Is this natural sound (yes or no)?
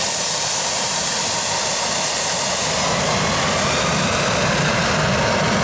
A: yes